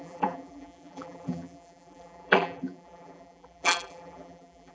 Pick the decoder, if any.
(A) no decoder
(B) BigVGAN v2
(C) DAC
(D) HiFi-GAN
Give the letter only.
B